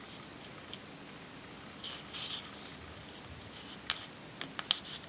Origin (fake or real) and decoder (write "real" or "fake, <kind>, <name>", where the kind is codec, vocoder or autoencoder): real